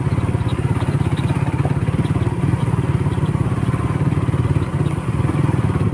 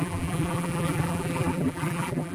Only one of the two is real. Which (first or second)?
first